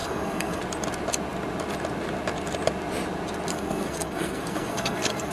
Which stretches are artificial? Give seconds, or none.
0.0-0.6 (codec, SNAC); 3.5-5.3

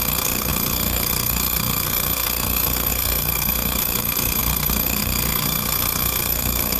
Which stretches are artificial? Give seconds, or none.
0.0-6.8 (codec, SNAC)

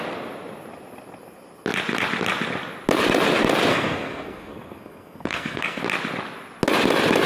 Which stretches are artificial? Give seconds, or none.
3.7-5.8 (codec, SNAC)

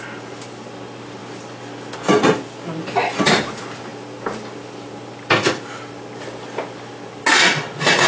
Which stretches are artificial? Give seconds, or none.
none

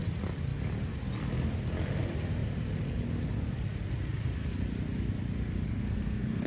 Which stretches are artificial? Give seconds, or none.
5.7-6.5 (codec, SNAC)